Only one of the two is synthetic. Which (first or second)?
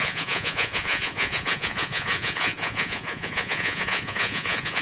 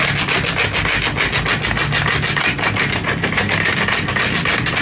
first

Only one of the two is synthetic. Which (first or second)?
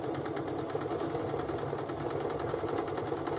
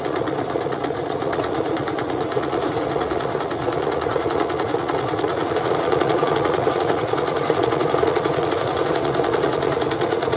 second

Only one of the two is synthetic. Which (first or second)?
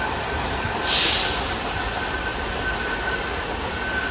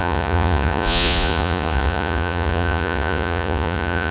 second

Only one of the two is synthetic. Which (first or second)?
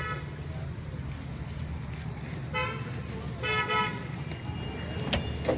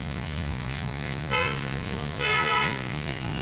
second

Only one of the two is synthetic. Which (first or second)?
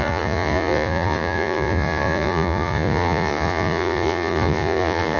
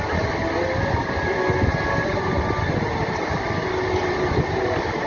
first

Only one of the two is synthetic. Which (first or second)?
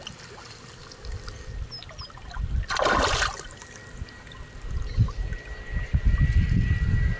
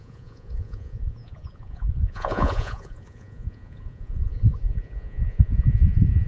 second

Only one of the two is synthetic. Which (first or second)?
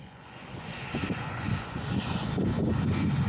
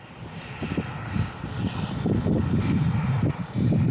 first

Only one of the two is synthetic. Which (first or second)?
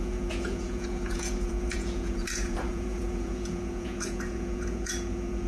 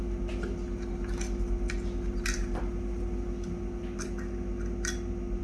first